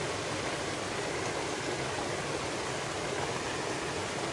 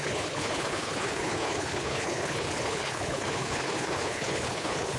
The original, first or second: first